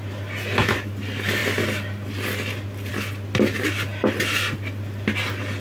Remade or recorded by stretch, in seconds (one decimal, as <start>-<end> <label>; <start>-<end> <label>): 0.0-5.6 recorded